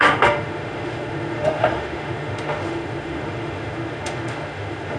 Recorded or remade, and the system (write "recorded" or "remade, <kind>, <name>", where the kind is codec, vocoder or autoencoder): remade, autoencoder, DAC-VAE